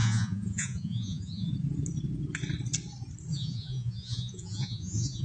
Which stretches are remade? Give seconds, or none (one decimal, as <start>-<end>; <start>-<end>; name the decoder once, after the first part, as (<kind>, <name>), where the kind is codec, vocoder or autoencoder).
0.0-1.5 (vocoder, Vocos); 3.3-5.2